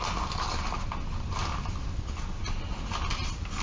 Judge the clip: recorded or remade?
recorded